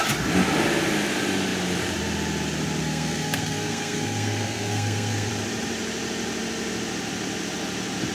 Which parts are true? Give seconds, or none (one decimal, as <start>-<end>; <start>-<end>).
0.0-2.8; 5.3-8.1